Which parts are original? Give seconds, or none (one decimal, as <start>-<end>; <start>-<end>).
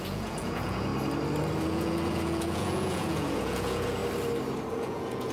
0.9-1.6; 4.0-4.7